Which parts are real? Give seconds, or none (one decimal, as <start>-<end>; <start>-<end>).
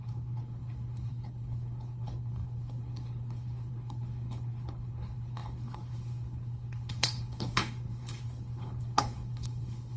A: none